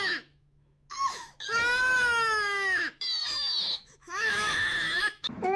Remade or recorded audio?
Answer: remade